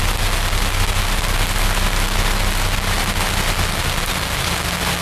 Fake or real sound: real